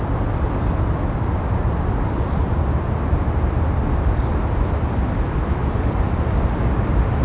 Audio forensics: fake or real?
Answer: real